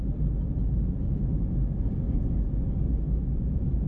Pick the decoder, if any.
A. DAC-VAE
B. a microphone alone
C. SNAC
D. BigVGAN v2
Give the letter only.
B